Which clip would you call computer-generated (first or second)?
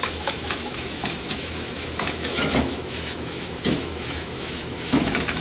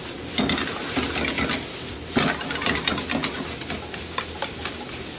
first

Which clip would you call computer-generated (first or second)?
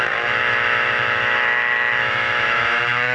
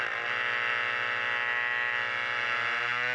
first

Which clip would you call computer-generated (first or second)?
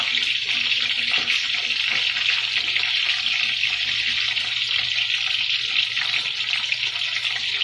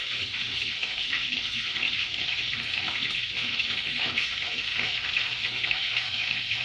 second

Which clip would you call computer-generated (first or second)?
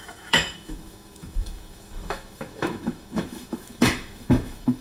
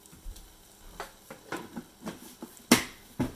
first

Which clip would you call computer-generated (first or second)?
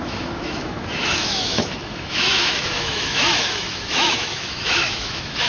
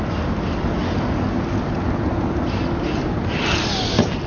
first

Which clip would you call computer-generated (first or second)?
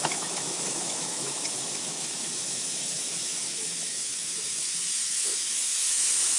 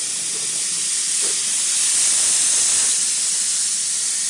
first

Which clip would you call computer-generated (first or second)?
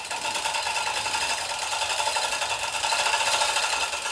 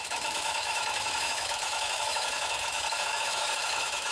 second